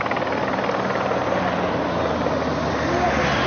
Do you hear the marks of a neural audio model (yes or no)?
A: no